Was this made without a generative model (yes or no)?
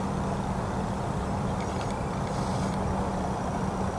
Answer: yes